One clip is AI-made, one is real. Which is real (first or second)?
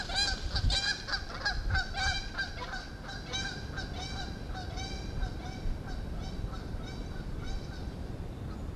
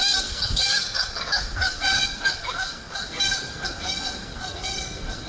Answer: first